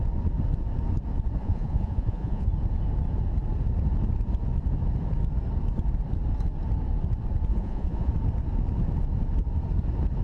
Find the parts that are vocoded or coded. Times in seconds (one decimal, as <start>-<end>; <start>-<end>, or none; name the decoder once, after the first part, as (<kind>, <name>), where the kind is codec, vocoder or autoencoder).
1.4-2.5 (vocoder, Vocos); 7.5-8.1

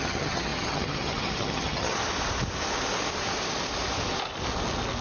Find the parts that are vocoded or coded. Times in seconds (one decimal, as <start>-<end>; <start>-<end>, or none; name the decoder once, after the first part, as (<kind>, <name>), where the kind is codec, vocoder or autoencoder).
0.0-2.0 (vocoder, HiFi-GAN)

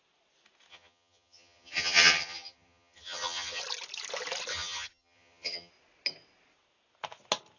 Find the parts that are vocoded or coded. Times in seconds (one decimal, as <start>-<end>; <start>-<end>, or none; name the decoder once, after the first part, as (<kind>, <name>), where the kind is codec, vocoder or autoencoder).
0.7-3.6 (vocoder, HiFi-GAN); 4.5-5.7